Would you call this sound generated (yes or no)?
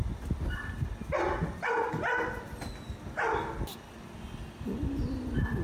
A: no